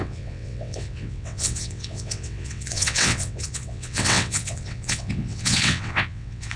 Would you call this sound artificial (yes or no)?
yes